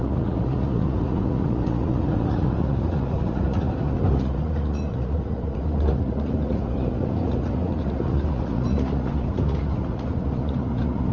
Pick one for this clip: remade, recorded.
remade